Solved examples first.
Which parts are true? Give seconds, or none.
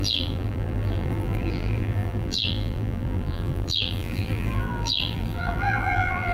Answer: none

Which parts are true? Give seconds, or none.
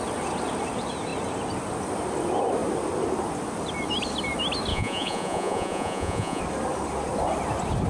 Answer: 0.0-4.7; 6.4-7.9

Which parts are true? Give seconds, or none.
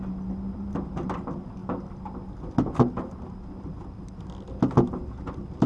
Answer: 0.0-5.7